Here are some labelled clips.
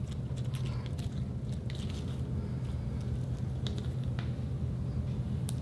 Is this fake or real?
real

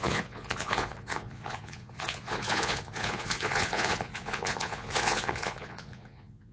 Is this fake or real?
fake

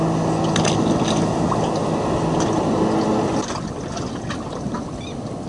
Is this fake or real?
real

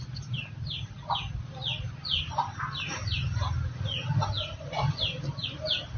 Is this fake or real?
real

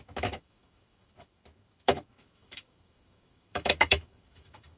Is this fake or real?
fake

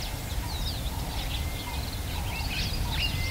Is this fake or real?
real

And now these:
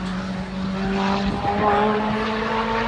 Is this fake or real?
real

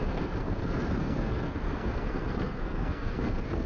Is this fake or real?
fake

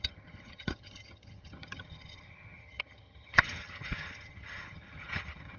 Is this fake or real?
fake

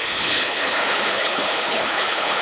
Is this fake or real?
fake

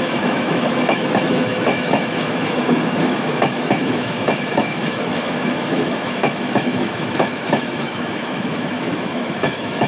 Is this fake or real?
fake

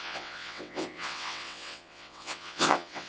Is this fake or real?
fake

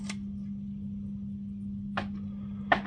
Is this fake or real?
real